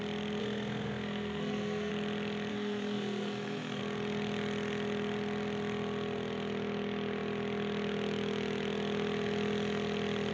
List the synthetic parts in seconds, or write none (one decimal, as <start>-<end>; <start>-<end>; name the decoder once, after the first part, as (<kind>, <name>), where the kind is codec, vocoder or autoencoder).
0.4-1.9 (codec, SNAC); 2.5-3.8